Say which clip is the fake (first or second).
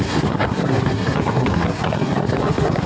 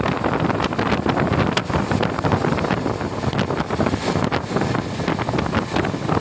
first